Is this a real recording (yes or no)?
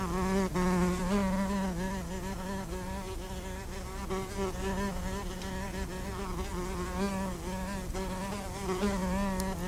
yes